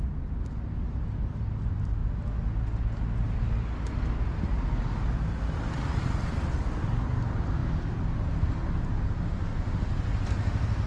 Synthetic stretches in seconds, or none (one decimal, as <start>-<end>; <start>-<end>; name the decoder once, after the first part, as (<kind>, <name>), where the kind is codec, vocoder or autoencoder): none